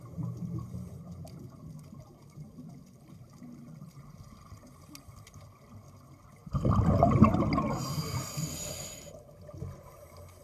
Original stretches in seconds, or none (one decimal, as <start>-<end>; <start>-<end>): 0.0-10.4